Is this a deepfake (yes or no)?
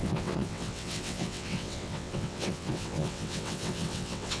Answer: yes